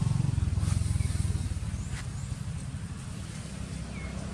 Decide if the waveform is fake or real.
real